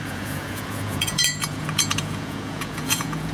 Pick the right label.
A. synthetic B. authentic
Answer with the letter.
A